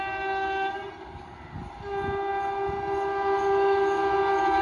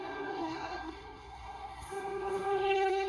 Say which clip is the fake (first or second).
second